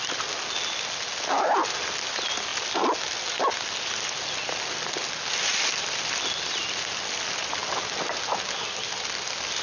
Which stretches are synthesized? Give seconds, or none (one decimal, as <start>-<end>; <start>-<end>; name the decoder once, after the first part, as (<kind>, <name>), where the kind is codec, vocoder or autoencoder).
none